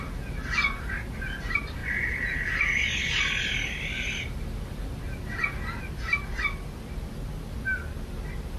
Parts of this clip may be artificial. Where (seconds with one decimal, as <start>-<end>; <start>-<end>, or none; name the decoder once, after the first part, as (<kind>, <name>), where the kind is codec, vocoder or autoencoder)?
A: 1.8-5.0 (vocoder, BigVGAN v2)